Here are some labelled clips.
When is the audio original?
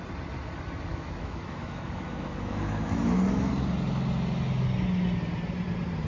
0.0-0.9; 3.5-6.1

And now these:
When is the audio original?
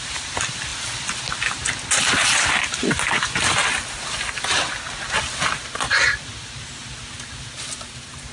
0.0-8.3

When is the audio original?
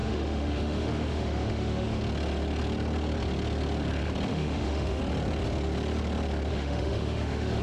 2.0-4.3; 5.0-6.5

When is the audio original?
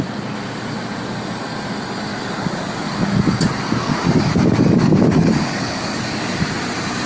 0.0-2.1; 6.4-7.1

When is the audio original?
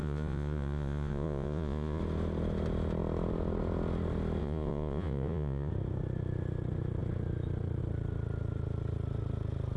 2.0-4.4; 5.7-9.8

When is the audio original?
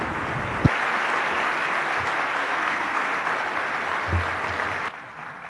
0.0-2.4; 3.1-5.5